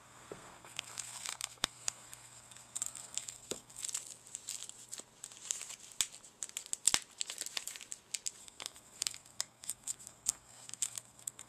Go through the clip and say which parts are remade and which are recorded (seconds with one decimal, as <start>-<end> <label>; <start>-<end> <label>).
0.0-3.8 remade; 3.8-8.4 recorded; 8.4-11.5 remade